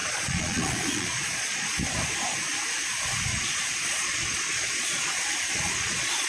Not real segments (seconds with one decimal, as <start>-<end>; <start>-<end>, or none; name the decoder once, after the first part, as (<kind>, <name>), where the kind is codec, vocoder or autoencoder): 0.0-1.8 (vocoder, Vocos); 3.3-6.3

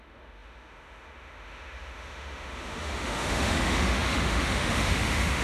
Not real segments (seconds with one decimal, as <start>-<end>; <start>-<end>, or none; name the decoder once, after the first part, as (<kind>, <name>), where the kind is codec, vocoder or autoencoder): 0.0-5.4 (autoencoder, DAC-VAE)